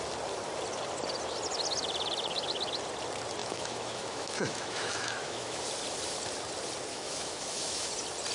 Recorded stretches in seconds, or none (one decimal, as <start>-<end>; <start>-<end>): 0.0-3.4; 5.6-6.9; 7.9-8.3